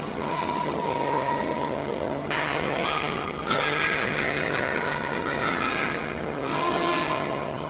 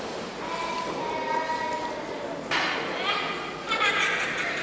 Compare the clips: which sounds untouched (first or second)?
second